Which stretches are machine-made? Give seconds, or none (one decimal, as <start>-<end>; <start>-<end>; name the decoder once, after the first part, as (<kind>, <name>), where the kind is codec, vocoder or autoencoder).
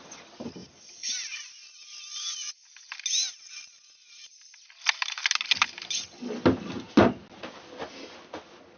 none